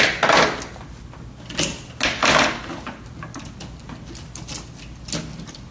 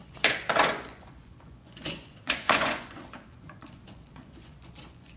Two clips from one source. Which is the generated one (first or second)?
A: second